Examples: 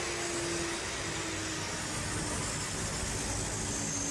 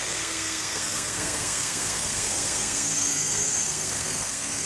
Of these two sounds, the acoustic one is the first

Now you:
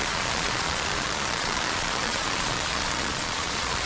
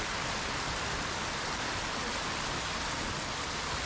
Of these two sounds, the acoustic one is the second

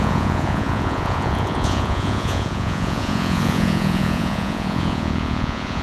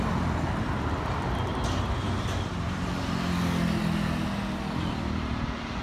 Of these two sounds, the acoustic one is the second